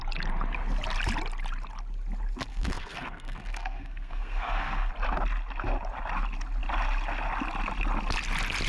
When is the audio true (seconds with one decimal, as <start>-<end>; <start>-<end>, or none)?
0.0-2.5; 4.9-8.7